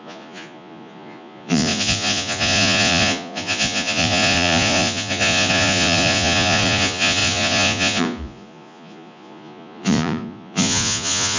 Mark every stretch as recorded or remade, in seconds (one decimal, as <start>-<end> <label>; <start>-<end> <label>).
0.0-11.4 remade